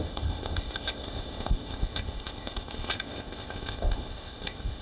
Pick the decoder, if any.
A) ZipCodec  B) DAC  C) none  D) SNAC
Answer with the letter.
A